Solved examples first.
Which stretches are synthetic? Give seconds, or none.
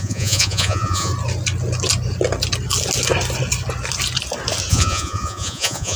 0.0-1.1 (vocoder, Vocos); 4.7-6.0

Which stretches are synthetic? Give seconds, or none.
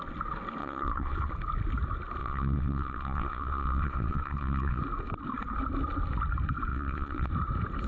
0.6-1.3 (vocoder, WaveNeXt); 2.2-4.8; 6.7-7.3